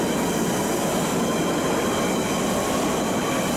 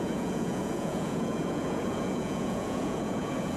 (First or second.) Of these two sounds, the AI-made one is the second